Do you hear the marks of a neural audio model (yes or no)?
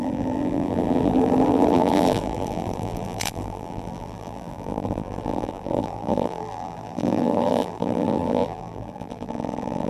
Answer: yes